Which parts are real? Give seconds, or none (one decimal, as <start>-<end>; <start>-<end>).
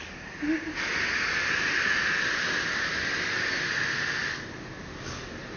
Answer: 0.0-5.6